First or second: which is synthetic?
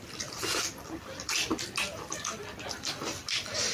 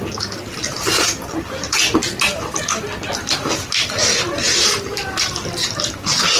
first